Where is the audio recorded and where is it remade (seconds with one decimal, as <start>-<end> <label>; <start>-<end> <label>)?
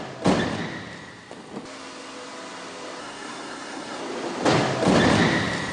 0.0-3.0 recorded; 3.0-4.0 remade; 4.0-5.7 recorded